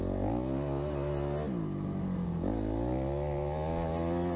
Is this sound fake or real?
real